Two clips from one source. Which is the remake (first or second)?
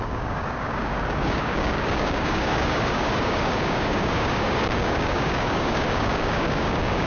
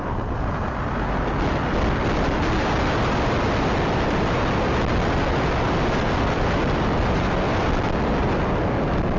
first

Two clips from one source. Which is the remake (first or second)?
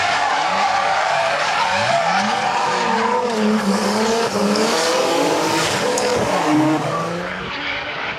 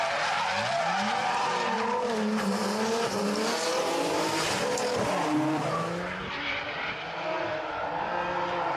first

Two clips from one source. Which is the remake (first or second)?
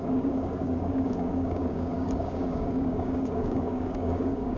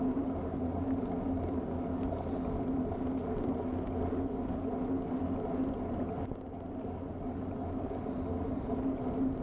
first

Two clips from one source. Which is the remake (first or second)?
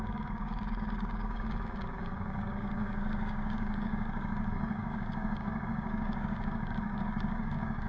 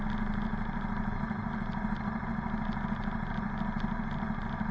first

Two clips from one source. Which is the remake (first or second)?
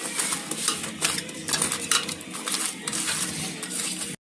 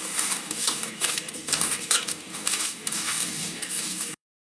second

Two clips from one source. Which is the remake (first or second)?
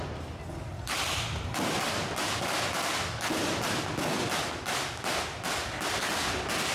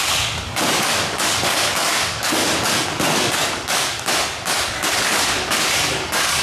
second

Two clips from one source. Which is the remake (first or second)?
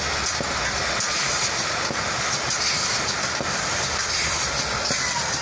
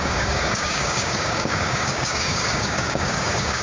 second